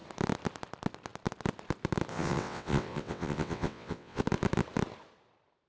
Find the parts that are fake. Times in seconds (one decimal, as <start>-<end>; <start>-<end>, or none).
2.1-4.2